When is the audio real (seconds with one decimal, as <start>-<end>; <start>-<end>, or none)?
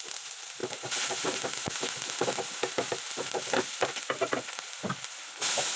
0.0-5.8